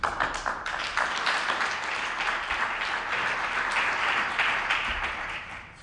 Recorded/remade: recorded